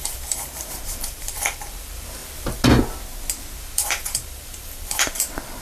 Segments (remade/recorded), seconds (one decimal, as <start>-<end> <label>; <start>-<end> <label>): 0.0-2.2 remade; 2.2-3.5 recorded; 3.5-5.6 remade